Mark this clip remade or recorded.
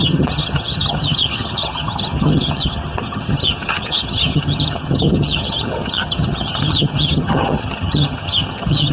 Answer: remade